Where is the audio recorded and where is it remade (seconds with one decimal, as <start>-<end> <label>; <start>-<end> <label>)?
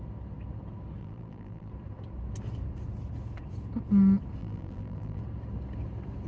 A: 0.0-1.0 recorded; 1.0-1.7 remade; 1.7-4.4 recorded; 4.4-5.2 remade; 5.2-6.3 recorded